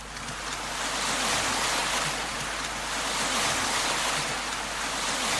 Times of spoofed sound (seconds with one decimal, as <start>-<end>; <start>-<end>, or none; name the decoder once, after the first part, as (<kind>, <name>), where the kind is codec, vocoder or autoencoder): none